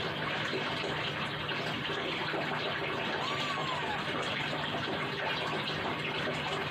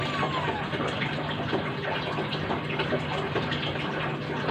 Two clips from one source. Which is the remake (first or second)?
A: first